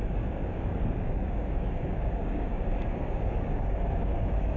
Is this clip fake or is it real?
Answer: fake